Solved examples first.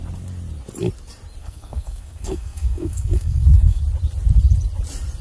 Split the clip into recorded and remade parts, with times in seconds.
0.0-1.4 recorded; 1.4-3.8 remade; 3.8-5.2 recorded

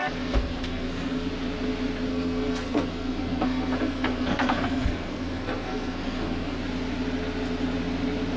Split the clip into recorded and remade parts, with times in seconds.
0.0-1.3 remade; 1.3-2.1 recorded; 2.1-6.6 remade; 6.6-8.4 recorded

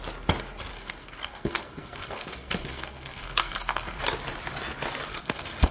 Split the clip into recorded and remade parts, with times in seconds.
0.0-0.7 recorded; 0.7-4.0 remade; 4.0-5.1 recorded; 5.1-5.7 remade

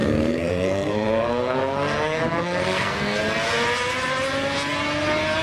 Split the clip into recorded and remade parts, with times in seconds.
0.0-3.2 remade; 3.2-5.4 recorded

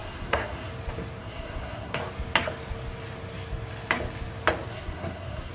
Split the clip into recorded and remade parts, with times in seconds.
0.0-0.7 remade; 0.7-1.2 recorded; 1.2-2.0 remade; 2.0-4.7 recorded; 4.7-5.5 remade

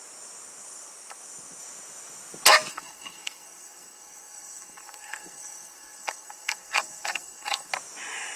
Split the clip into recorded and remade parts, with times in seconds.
0.0-2.7 recorded; 2.7-7.7 remade; 7.7-8.4 recorded

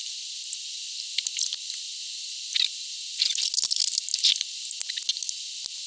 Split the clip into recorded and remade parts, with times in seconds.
0.0-5.9 recorded